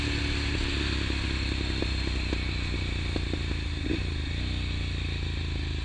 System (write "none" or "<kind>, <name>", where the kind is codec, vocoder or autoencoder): none